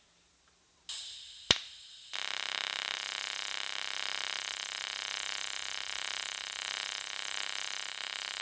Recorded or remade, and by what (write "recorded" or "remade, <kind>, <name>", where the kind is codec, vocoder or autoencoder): recorded